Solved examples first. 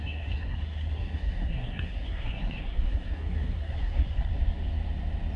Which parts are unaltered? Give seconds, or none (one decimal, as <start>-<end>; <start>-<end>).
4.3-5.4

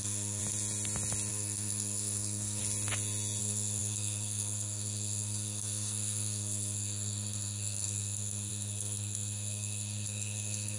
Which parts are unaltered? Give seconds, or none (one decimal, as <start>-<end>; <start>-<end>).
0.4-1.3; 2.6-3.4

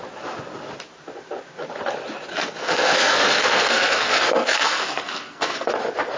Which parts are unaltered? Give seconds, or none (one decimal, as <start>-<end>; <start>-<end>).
0.0-2.3; 5.7-6.2

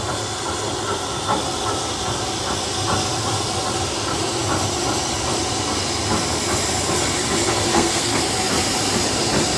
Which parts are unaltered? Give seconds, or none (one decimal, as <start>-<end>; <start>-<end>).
0.0-7.7; 8.2-9.6

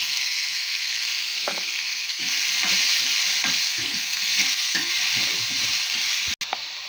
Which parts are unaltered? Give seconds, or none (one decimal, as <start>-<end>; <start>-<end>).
2.2-3.7; 4.9-6.9

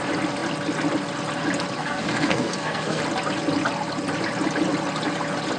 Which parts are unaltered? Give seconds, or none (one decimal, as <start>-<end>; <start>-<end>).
0.0-1.8; 3.0-5.6

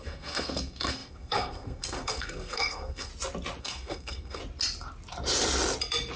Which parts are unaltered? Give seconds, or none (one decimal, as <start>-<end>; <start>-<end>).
3.1-3.6; 4.4-6.2

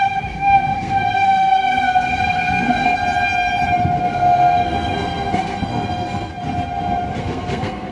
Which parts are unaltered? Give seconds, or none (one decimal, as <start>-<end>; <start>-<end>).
3.0-4.0; 6.3-7.2